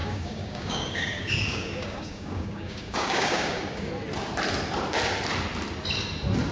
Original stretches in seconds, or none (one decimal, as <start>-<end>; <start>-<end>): 3.9-6.5